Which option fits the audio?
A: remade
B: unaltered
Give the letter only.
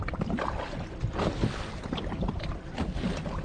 B